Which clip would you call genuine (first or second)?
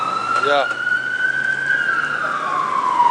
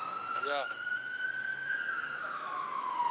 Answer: first